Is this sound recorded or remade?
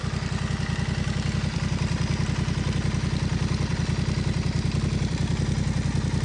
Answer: recorded